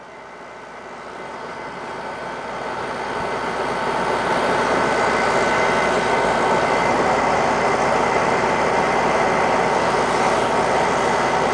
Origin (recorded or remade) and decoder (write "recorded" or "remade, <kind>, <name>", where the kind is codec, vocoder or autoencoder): recorded